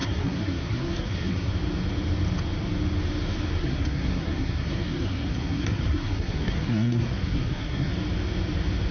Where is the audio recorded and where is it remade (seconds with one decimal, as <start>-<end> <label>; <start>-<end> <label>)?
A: 0.0-1.5 remade; 1.5-3.6 recorded; 3.6-7.9 remade; 7.9-8.9 recorded